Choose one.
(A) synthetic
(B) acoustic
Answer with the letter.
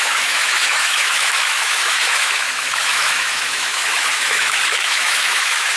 A